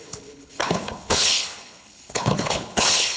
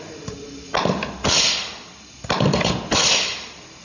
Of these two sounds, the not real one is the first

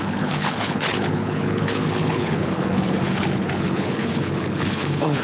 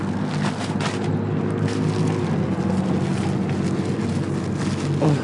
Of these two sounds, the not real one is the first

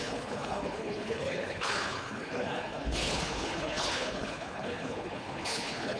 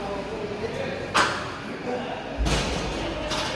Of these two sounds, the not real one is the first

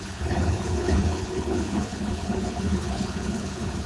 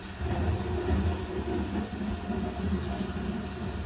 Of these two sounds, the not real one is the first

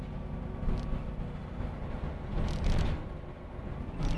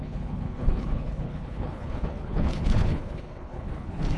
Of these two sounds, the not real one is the second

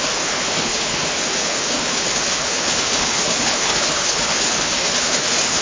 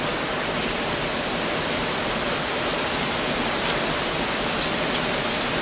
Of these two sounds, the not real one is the first